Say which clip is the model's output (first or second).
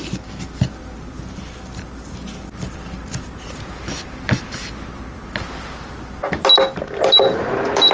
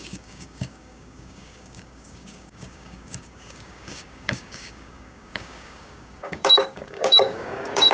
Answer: second